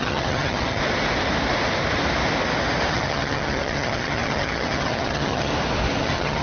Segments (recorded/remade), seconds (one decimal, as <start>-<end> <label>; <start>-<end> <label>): 0.0-0.8 remade; 0.8-2.9 recorded; 2.9-5.5 remade; 5.5-6.0 recorded; 6.0-6.4 remade